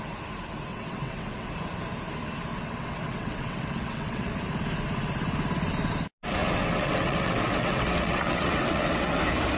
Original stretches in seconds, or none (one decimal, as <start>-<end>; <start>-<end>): 0.0-0.7; 1.5-2.5; 4.3-6.4; 9.2-9.6

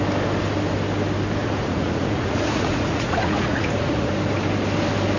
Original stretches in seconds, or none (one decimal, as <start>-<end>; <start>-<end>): 0.0-1.4; 4.1-5.2

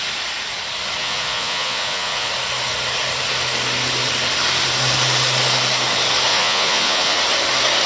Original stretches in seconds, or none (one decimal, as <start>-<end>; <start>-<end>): 0.0-1.0; 2.3-6.3; 7.2-7.9

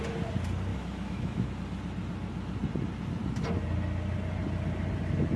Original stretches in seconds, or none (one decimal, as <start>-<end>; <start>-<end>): 0.0-0.7; 1.5-5.4

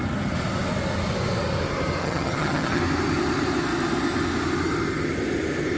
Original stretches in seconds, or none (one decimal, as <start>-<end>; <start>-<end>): 0.0-2.0; 2.8-5.8